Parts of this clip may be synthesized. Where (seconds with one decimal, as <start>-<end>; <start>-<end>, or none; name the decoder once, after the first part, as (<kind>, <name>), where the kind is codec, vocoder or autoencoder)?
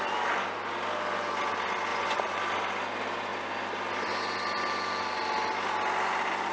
1.9-2.4 (vocoder, Vocos)